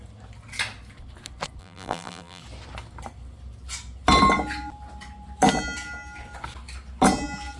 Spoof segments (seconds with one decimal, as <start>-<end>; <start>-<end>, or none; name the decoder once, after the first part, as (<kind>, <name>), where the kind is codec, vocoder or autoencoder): 1.6-2.4 (vocoder, BigVGAN v2)